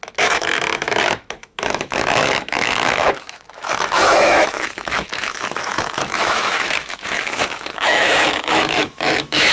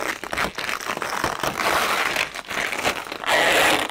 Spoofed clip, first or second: first